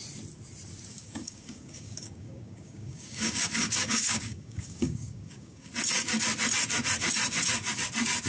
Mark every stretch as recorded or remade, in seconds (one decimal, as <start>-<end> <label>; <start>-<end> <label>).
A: 0.0-0.9 recorded; 0.9-5.7 remade; 5.7-8.3 recorded

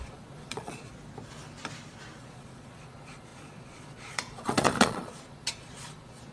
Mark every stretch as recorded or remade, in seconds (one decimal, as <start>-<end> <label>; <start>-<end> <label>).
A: 0.0-0.9 remade; 0.9-2.2 recorded; 2.2-6.3 remade

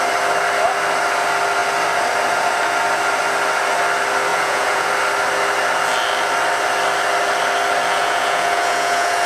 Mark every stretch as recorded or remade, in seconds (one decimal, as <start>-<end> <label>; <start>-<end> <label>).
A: 0.0-4.3 recorded; 4.3-4.9 remade; 4.9-7.9 recorded; 7.9-9.3 remade

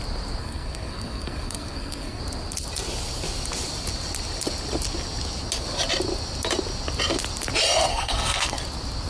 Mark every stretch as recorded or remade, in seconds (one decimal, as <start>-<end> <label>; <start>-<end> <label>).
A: 0.0-0.4 recorded; 0.4-2.2 remade; 2.2-7.9 recorded; 7.9-8.6 remade; 8.6-9.1 recorded